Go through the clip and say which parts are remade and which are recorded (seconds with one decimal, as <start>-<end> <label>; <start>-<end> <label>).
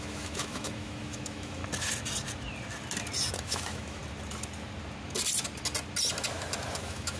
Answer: 0.0-1.6 remade; 1.6-3.3 recorded; 3.3-4.0 remade; 4.0-6.8 recorded; 6.8-7.2 remade